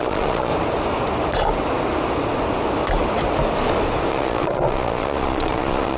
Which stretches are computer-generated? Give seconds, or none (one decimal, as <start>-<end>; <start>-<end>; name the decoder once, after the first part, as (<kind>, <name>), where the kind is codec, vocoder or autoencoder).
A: 0.0-0.5 (vocoder, Vocos); 4.1-6.0